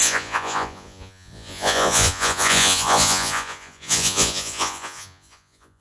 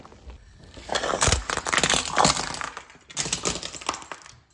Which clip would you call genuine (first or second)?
second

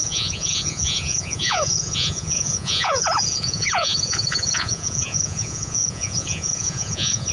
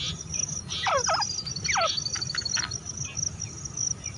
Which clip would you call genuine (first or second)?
second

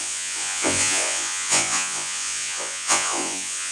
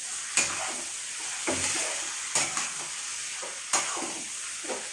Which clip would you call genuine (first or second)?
second